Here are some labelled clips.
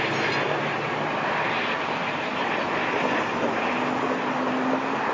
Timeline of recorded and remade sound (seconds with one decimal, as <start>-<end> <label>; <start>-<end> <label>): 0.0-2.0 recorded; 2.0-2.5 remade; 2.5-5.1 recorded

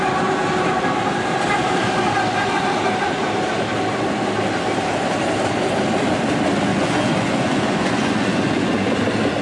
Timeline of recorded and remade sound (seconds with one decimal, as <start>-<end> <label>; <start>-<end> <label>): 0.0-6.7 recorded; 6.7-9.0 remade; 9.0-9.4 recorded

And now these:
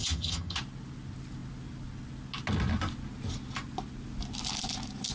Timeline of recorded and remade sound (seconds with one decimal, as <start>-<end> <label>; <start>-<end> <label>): 0.0-0.6 remade; 0.6-5.1 recorded

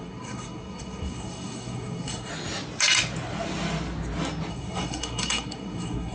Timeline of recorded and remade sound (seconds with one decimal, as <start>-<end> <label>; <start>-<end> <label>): 0.0-2.3 remade; 2.3-4.5 recorded; 4.5-6.1 remade

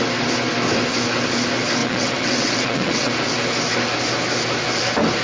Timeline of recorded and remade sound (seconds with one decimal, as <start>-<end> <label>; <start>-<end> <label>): 0.0-1.8 recorded; 1.8-3.1 remade; 3.1-5.2 recorded

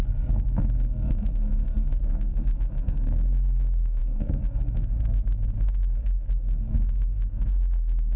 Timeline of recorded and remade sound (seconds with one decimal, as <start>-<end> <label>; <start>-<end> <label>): 0.0-8.2 remade

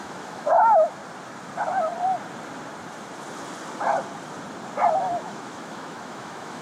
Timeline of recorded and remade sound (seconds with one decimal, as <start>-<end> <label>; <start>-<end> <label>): 0.0-1.0 remade; 1.0-5.0 recorded; 5.0-6.6 remade